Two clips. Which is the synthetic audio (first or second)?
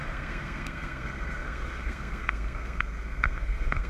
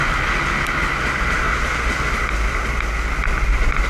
first